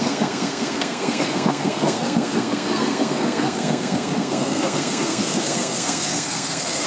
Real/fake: fake